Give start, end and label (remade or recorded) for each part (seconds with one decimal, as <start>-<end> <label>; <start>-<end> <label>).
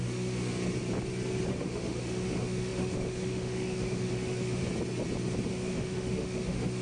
0.0-0.5 remade; 0.5-1.5 recorded; 1.5-4.6 remade; 4.6-5.5 recorded; 5.5-6.8 remade